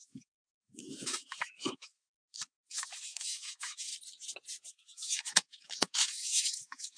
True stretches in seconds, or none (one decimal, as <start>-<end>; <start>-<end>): 3.9-4.7